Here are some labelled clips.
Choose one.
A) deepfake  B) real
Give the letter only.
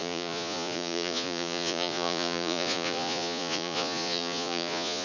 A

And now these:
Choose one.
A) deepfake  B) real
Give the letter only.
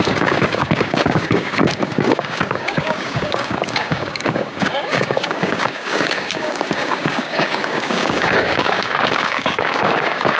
A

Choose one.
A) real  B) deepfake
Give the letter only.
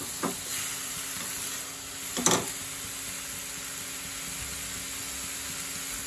A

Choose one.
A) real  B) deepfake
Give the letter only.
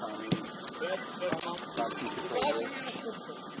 A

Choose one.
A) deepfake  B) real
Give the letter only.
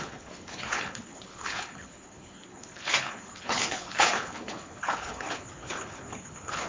A